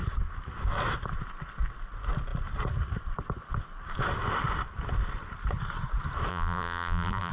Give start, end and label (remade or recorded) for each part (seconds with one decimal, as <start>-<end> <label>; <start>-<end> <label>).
0.0-6.3 recorded; 6.3-7.3 remade